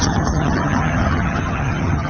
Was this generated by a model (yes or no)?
yes